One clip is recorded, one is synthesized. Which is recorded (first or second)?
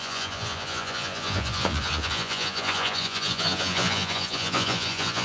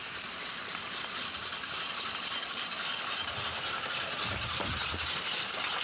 second